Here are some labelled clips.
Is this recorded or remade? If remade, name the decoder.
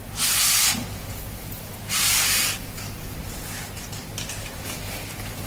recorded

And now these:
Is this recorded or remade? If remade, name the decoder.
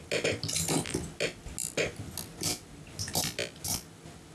recorded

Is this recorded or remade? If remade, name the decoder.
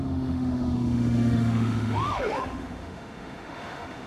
remade, autoencoder, DAC-VAE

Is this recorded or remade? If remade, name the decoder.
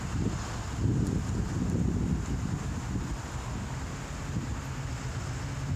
recorded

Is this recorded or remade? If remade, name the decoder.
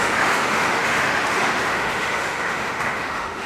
remade, autoencoder, DAC-VAE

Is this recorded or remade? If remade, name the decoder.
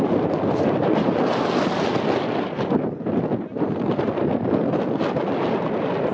recorded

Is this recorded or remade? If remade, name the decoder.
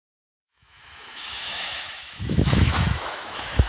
remade, autoencoder, DAC-VAE